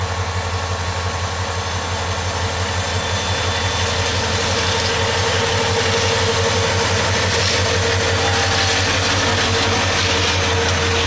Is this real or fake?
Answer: real